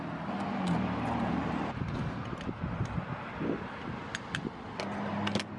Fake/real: real